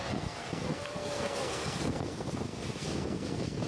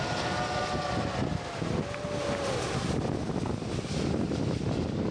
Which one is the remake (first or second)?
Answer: first